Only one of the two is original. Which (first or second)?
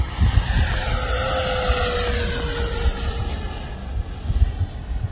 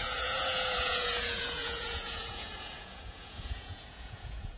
first